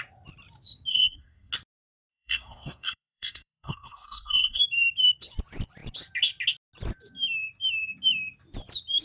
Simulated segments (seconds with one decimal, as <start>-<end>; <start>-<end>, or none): 0.9-1.5; 2.1-4.6

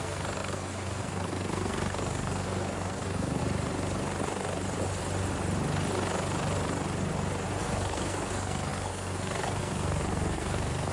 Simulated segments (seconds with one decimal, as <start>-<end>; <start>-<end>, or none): 0.0-3.4; 7.6-10.9

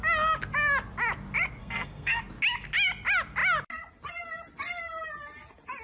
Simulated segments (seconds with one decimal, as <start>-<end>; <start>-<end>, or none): 1.6-2.2

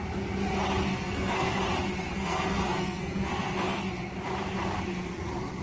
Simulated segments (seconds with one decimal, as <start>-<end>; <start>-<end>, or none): 0.9-1.5; 2.1-3.8

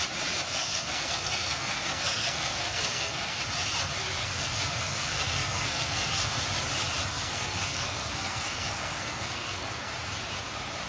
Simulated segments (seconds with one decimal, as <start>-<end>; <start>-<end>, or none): 0.5-3.4; 4.2-6.3; 7.1-9.9